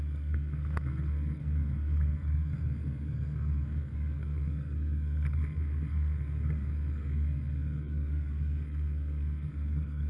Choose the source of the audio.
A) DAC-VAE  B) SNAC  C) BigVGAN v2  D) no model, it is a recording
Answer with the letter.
B